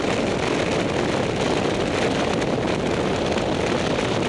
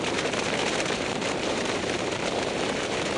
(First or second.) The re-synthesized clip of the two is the second